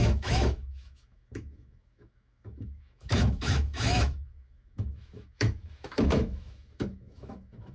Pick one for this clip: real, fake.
fake